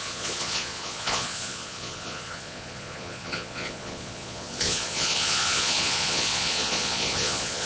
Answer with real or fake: fake